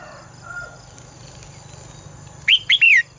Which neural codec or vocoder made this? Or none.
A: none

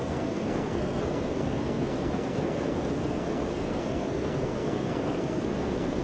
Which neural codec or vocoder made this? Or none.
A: codec, SNAC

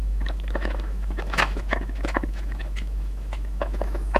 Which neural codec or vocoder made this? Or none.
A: autoencoder, DAC-VAE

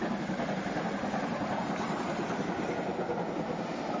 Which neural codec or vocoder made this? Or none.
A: none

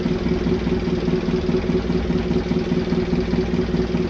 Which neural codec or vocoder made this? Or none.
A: none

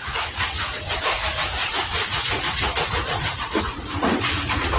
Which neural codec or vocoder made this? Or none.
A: vocoder, Vocos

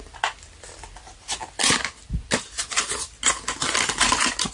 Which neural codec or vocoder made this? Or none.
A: none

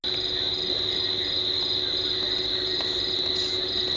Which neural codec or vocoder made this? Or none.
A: none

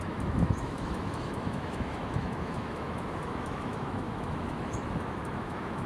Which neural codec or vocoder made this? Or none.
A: autoencoder, DAC-VAE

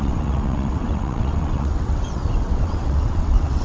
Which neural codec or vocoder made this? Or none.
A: vocoder, WaveNeXt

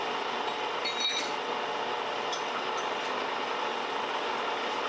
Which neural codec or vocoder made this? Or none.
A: none